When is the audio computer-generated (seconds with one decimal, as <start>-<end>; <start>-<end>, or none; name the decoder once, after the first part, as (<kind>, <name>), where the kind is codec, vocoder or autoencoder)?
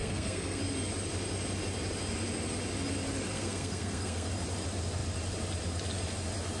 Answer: 0.0-0.6 (codec, SNAC); 3.3-4.3